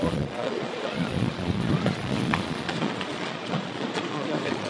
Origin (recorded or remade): remade